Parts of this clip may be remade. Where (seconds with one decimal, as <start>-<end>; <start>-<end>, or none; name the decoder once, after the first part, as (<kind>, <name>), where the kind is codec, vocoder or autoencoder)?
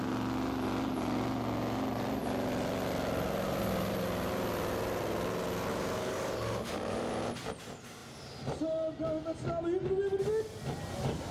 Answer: 5.7-7.1 (codec, DAC)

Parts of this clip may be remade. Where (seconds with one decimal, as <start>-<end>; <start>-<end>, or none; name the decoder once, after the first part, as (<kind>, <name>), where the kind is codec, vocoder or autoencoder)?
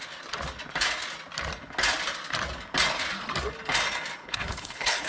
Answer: 4.2-5.1 (codec, HILCodec)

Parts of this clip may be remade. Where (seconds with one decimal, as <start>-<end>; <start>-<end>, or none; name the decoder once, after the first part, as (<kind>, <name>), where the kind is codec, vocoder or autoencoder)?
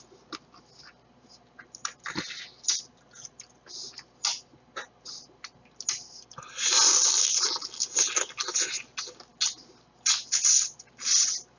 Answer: none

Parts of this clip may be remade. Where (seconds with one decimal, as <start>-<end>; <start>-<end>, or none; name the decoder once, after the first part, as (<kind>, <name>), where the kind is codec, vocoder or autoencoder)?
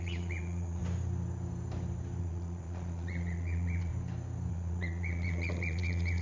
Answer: 0.0-0.8 (vocoder, Vocos); 2.2-3.9; 4.5-6.2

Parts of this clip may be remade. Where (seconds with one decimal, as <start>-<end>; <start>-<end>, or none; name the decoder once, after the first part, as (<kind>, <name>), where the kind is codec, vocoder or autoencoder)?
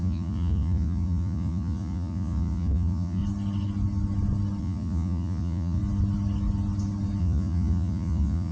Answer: 0.0-3.2 (vocoder, Vocos); 4.6-5.8; 7.2-8.5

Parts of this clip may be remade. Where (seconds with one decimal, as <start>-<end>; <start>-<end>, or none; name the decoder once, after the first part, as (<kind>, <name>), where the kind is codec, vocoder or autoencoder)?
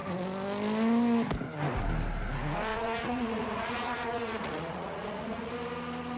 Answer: 2.7-5.5 (vocoder, Vocos)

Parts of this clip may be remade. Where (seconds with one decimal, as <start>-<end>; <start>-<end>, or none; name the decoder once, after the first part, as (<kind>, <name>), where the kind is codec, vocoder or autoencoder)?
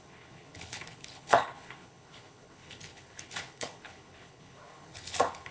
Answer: 0.0-5.5 (codec, HILCodec)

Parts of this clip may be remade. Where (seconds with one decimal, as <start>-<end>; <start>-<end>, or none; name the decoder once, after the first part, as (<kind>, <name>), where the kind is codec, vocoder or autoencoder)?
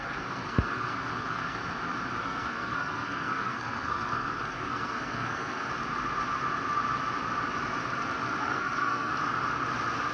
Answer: 0.0-1.6 (codec, SNAC); 2.2-5.7; 8.4-9.1